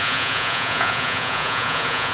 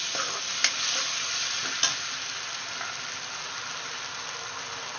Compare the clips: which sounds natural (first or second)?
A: second